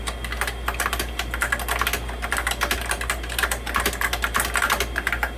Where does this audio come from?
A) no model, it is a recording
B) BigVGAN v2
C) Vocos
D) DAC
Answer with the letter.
A